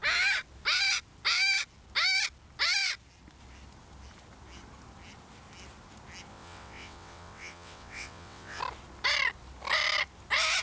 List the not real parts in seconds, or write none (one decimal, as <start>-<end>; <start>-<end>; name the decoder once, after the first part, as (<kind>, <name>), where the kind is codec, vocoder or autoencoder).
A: 6.3-8.6 (vocoder, WaveNeXt)